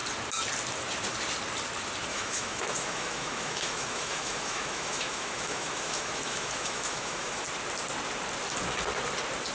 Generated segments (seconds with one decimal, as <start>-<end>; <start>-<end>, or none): 2.1-7.4